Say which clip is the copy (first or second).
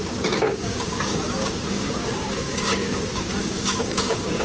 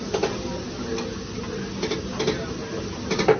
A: first